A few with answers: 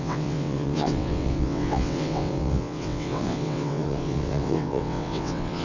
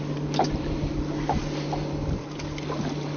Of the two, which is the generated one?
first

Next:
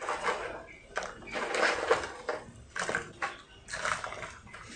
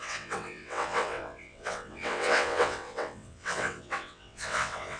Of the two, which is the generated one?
second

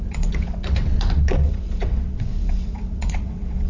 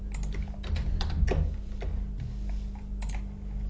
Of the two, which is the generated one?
first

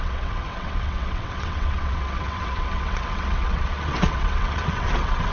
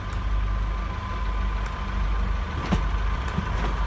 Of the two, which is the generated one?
first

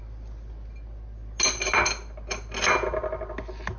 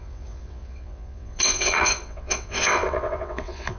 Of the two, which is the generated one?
second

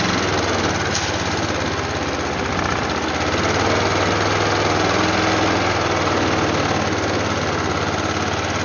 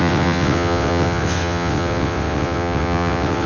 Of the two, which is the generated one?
second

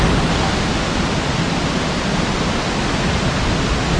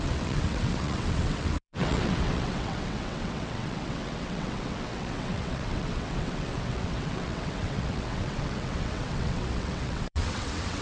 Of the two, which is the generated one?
second